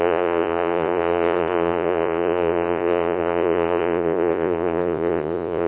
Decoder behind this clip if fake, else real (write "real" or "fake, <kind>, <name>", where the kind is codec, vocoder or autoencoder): fake, vocoder, Vocos